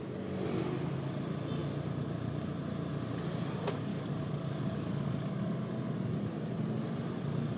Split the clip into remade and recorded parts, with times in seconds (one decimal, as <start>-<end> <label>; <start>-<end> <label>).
0.0-3.9 recorded; 3.9-5.5 remade; 5.5-7.6 recorded